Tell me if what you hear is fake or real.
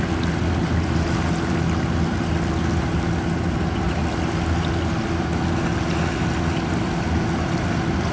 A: real